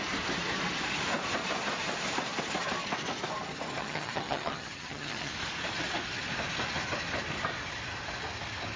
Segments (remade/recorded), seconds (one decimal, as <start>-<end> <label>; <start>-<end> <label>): 0.0-3.8 recorded; 3.8-5.3 remade; 5.3-8.8 recorded